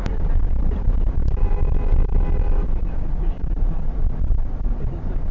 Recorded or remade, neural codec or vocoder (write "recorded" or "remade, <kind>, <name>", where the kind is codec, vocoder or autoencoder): recorded